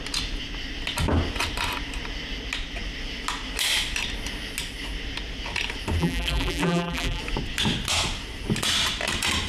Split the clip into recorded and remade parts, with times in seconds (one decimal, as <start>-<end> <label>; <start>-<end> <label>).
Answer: 0.0-6.0 recorded; 6.0-7.2 remade; 7.2-9.5 recorded